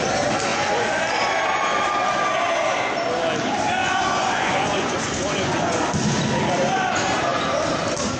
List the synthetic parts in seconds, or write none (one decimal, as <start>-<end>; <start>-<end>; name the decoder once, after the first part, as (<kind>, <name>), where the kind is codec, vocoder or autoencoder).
0.5-1.0 (vocoder, Vocos); 3.8-5.8